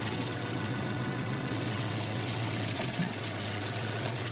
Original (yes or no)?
no